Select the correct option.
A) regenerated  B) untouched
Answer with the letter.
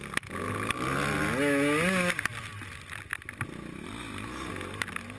B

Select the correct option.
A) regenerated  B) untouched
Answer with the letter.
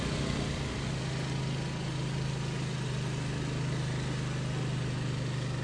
B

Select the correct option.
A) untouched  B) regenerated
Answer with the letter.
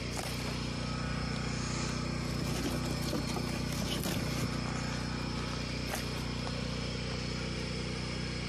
A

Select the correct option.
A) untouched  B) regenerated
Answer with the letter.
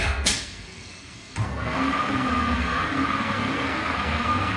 B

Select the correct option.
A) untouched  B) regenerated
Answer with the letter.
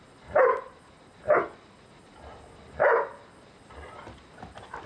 A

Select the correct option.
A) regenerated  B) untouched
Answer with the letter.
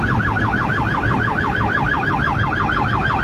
B